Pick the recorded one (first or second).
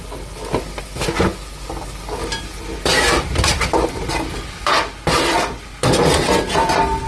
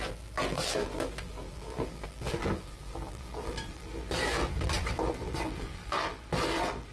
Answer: first